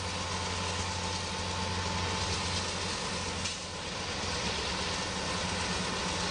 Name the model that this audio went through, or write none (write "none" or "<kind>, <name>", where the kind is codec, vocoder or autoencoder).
none